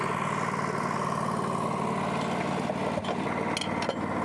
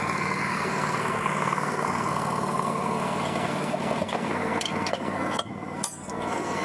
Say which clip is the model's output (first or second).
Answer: second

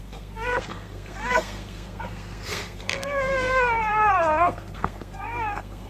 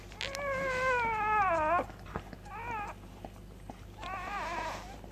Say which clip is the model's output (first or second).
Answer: first